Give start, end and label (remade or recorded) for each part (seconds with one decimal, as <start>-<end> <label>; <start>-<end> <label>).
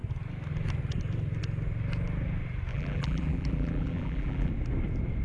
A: 0.0-2.7 recorded; 2.7-4.5 remade; 4.5-5.2 recorded